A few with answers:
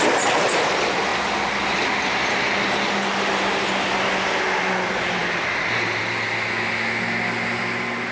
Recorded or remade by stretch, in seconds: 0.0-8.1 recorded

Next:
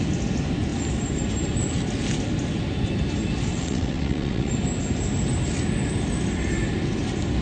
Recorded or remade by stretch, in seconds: 0.0-3.5 recorded; 3.5-4.5 remade; 4.5-7.4 recorded

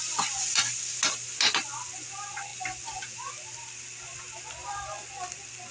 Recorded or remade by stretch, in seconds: 0.0-5.7 recorded